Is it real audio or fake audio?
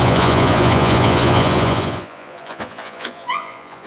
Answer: fake